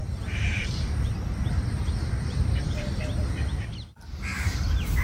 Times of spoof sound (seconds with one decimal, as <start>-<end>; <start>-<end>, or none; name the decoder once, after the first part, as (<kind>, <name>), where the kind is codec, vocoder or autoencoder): 0.0-3.0 (vocoder, BigVGAN v2); 4.3-5.0